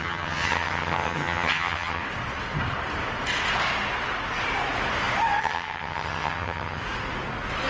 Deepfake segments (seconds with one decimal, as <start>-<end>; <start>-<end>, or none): 0.0-2.0; 5.4-6.8